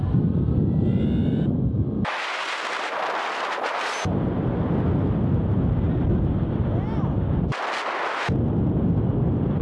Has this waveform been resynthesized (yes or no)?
no